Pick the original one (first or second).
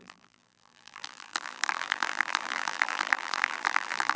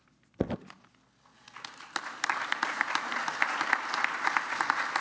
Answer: second